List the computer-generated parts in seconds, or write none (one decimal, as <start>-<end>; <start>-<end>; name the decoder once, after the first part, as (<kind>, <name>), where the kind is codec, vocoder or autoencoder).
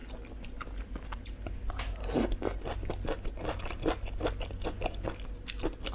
none